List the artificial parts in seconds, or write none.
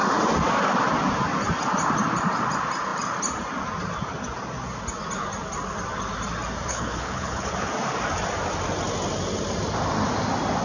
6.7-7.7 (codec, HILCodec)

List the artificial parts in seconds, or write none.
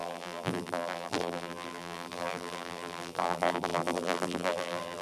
0.0-5.0 (vocoder, BigVGAN v2)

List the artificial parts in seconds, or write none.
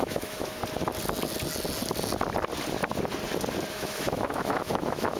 0.0-0.6 (autoencoder, DAC-VAE); 3.7-5.2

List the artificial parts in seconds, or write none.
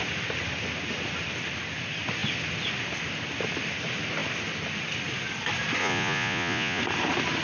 5.8-6.8 (vocoder, Vocos)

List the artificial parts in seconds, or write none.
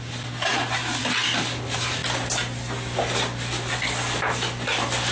none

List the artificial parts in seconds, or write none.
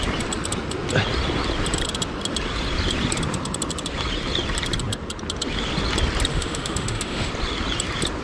6.3-7.3 (autoencoder, DAC-VAE)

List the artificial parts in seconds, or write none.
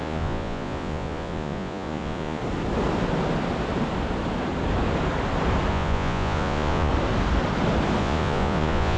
0.0-2.4 (vocoder, Vocos); 5.7-6.9; 8.0-9.0